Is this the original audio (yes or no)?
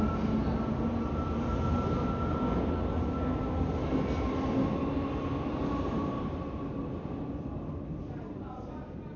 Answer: yes